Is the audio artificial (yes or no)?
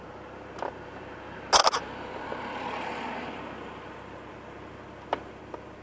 no